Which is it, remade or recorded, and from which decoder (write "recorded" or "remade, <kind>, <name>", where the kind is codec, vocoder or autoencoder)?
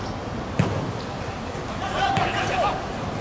recorded